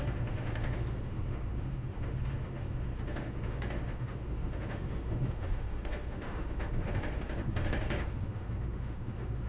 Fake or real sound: fake